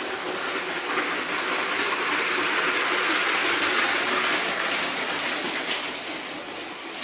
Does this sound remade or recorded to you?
recorded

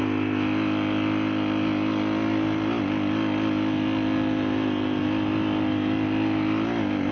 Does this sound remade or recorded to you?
recorded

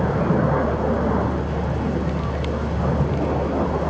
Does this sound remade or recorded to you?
recorded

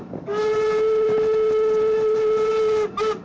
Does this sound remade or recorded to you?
recorded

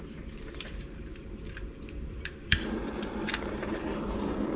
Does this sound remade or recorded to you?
remade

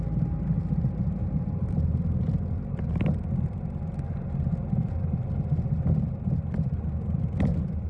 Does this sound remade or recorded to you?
recorded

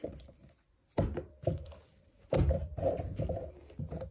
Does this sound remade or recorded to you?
remade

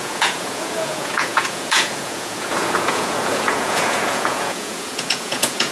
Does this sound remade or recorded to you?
remade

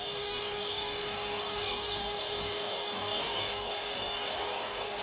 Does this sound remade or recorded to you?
remade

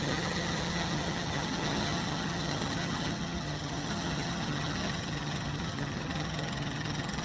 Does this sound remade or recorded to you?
remade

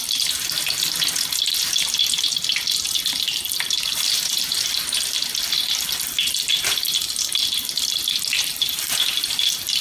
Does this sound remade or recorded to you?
recorded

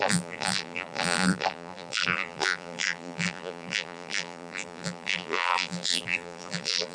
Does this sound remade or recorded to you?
remade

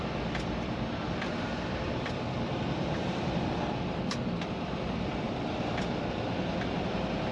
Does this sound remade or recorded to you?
remade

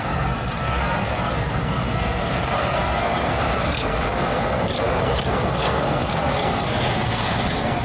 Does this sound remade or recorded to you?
remade